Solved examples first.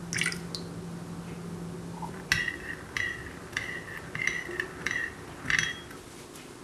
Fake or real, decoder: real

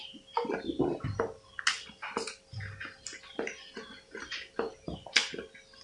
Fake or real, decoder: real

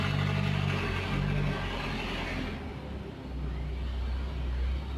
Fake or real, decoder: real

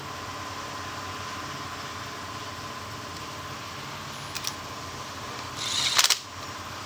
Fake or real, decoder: real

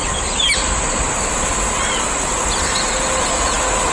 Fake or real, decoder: real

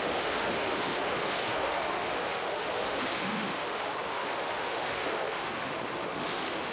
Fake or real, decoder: fake, autoencoder, DAC-VAE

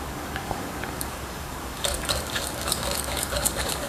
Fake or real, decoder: fake, codec, DAC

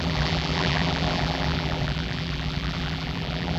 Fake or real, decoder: fake, vocoder, BigVGAN v2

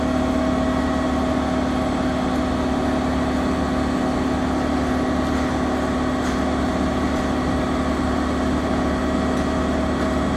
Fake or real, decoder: real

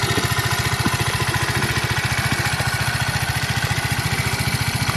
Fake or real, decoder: real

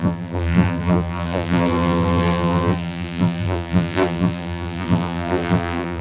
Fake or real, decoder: fake, vocoder, BigVGAN v2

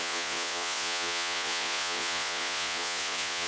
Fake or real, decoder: fake, vocoder, Vocos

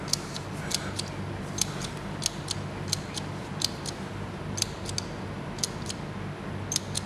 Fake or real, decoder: real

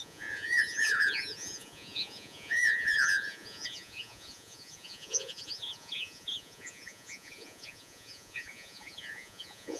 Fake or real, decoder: fake, vocoder, Vocos